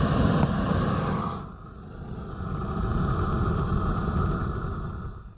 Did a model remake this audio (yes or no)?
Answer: no